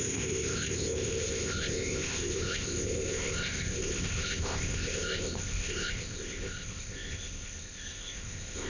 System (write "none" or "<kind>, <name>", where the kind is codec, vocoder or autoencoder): codec, ZipCodec